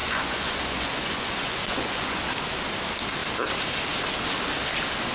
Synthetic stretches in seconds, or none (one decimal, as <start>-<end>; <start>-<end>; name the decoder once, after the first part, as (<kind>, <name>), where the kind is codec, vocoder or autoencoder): 0.0-2.2 (vocoder, Vocos)